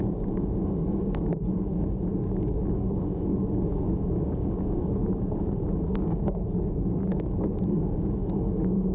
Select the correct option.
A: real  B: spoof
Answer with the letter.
B